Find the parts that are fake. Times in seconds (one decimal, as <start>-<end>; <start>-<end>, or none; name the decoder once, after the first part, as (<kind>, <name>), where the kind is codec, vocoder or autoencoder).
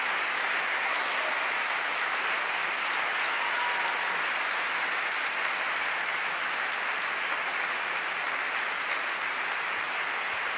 0.7-1.2 (codec, SNAC)